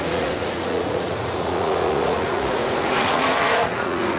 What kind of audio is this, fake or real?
fake